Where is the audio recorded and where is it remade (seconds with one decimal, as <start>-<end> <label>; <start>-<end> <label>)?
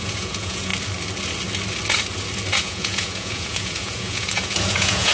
0.0-0.7 remade; 0.7-2.6 recorded; 2.6-5.1 remade